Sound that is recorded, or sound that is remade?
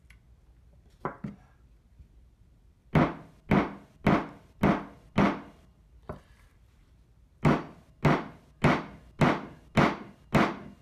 recorded